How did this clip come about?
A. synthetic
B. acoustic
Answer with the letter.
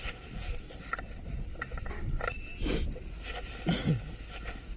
B